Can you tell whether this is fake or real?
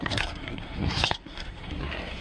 fake